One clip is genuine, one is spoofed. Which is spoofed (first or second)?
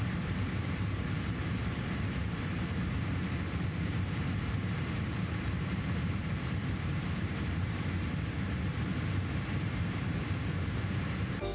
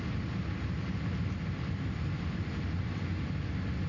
first